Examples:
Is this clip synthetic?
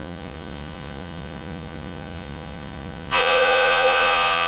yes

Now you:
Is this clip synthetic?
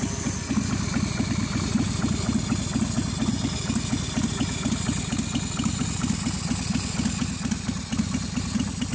no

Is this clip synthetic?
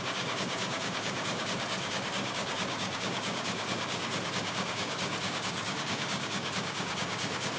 yes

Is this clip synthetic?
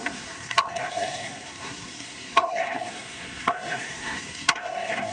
yes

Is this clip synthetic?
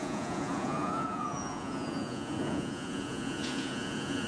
yes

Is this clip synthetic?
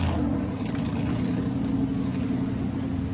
no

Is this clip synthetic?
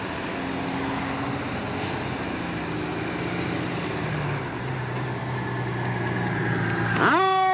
no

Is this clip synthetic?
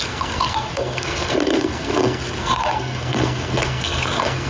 yes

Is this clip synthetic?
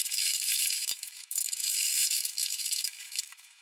yes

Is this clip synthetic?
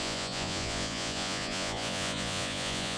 yes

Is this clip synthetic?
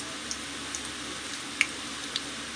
no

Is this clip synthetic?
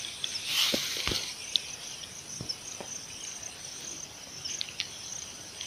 no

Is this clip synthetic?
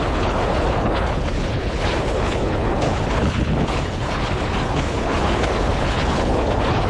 yes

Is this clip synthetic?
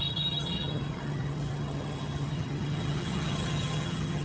yes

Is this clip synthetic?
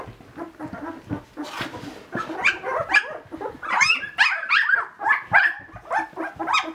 no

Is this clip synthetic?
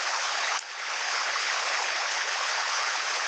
yes